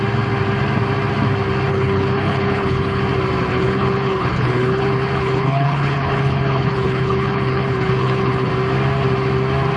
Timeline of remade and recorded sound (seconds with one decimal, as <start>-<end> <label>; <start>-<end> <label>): 0.0-1.7 recorded; 1.7-3.0 remade; 3.0-3.5 recorded; 3.5-8.5 remade; 8.5-9.8 recorded